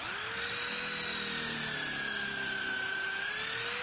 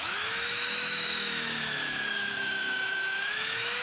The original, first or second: first